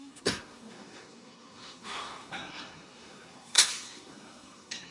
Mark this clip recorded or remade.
remade